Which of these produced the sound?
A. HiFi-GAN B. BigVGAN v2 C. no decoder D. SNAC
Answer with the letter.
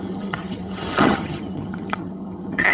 A